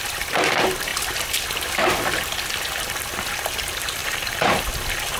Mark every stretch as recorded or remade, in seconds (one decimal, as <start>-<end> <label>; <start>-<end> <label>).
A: 0.0-4.0 recorded; 4.0-4.7 remade; 4.7-5.2 recorded